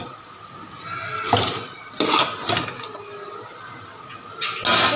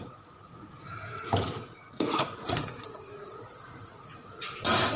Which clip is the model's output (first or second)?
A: second